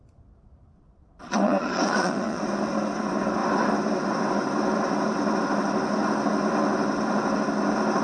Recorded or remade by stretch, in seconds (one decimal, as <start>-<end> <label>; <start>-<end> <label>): 0.0-1.2 recorded; 1.2-2.4 remade; 2.4-8.0 recorded